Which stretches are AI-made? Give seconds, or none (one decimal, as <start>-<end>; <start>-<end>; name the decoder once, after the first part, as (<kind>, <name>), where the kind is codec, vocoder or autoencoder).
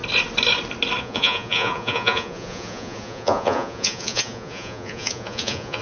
1.0-5.8 (vocoder, Vocos)